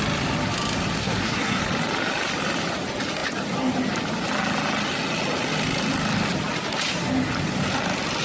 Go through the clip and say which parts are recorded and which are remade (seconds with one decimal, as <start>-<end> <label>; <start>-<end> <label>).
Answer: 0.0-1.0 recorded; 1.0-1.6 remade; 1.6-8.2 recorded